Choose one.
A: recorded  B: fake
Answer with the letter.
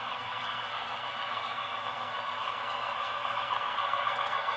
B